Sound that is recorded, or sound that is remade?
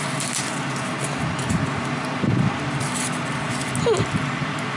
recorded